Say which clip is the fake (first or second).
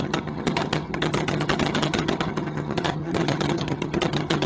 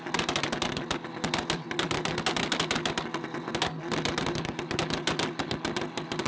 first